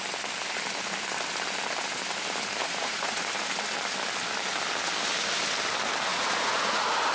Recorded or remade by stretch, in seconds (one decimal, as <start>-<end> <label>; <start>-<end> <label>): 0.0-2.6 recorded; 2.6-3.2 remade; 3.2-6.1 recorded; 6.1-7.1 remade